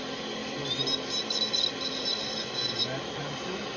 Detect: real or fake real